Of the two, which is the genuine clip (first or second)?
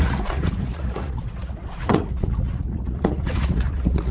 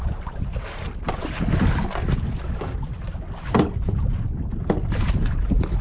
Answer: second